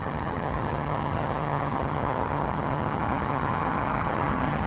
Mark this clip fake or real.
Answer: fake